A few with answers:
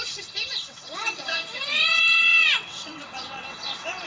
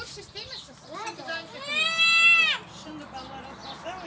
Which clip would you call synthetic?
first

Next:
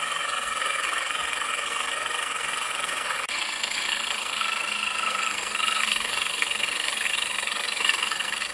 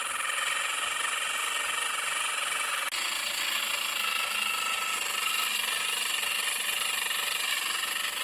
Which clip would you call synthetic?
first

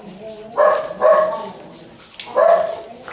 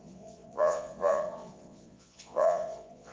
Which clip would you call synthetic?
second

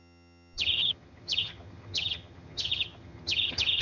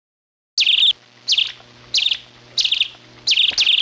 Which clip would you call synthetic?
first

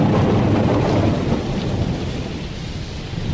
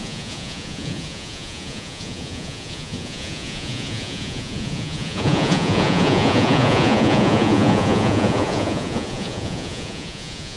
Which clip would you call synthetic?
second